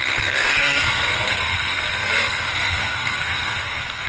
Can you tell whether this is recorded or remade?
remade